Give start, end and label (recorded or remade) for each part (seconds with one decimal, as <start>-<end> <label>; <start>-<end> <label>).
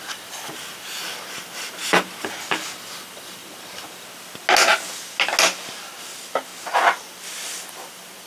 0.0-1.8 remade; 1.8-2.8 recorded; 2.8-3.4 remade; 3.4-5.9 recorded; 5.9-6.5 remade; 6.5-7.0 recorded; 7.0-8.3 remade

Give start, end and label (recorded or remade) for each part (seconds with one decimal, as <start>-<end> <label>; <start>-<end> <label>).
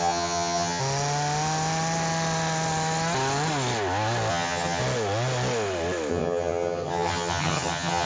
0.0-0.8 remade; 0.8-4.3 recorded; 4.3-4.8 remade; 4.8-6.1 recorded; 6.1-8.1 remade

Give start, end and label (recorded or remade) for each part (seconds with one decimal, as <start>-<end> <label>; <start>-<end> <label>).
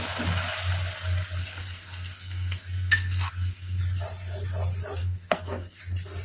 0.0-1.4 recorded; 1.4-3.8 remade; 3.8-5.0 recorded; 5.0-5.8 remade; 5.8-6.2 recorded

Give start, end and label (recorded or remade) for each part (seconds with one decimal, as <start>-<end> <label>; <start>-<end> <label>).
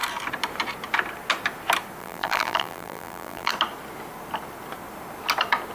0.0-2.0 recorded; 2.0-3.5 remade; 3.5-5.7 recorded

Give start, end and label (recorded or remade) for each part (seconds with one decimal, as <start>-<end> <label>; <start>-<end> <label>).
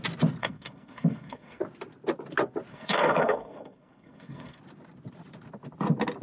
0.0-0.4 recorded; 0.4-1.6 remade; 1.6-2.7 recorded; 2.7-4.6 remade; 4.6-6.2 recorded